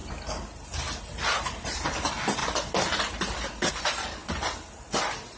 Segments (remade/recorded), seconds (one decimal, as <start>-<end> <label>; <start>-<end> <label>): 0.0-1.0 recorded; 1.0-2.4 remade; 2.4-3.7 recorded; 3.7-4.2 remade; 4.2-5.0 recorded; 5.0-5.4 remade